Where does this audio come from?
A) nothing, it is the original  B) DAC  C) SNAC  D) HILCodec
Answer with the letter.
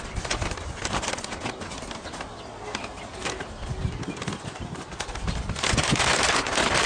A